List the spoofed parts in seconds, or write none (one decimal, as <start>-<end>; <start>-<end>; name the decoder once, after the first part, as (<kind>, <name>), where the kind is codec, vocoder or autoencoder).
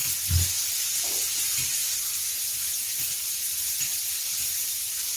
1.8-5.2 (vocoder, BigVGAN v2)